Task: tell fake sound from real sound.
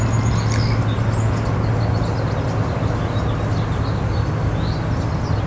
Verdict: real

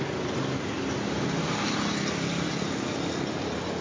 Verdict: real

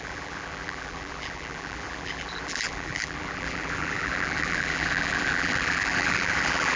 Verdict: fake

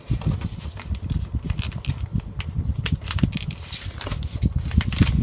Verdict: real